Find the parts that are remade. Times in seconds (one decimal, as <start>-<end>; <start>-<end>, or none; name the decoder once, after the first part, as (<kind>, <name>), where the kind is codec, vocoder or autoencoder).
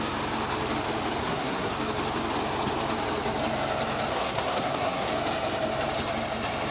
1.2-1.7 (codec, SNAC); 4.1-5.1